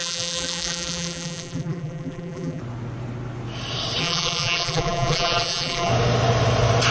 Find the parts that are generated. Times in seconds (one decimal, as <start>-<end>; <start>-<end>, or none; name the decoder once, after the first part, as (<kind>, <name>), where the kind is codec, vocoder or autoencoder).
0.0-2.6 (vocoder, BigVGAN v2); 4.0-5.9